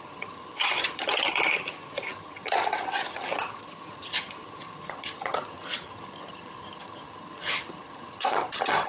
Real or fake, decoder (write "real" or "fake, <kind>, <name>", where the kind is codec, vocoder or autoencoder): fake, vocoder, HiFi-GAN